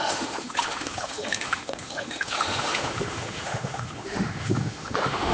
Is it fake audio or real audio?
fake